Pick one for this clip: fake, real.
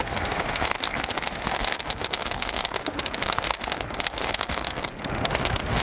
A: fake